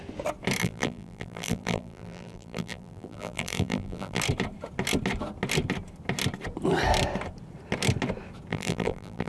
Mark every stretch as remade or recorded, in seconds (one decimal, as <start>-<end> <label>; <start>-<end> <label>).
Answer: 0.0-0.6 recorded; 0.6-4.2 remade; 4.2-8.5 recorded; 8.5-9.3 remade